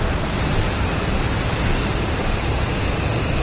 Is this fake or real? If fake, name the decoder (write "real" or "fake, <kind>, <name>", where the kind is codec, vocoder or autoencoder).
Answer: real